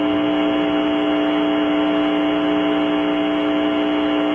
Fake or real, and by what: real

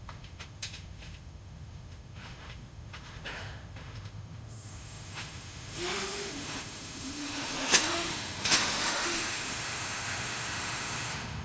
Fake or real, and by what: fake, autoencoder, DAC-VAE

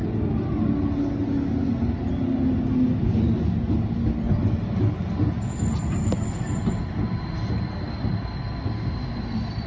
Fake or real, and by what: real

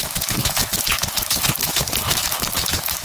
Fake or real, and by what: fake, autoencoder, DAC-VAE